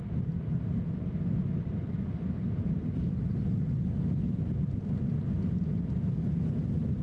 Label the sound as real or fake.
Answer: real